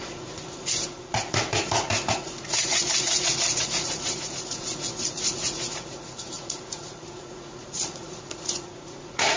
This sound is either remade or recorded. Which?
remade